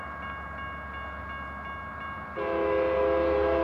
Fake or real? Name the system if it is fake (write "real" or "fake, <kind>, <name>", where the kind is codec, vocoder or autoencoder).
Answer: real